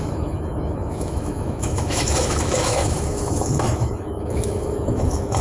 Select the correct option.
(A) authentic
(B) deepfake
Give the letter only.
B